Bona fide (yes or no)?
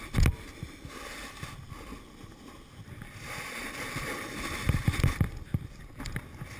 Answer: yes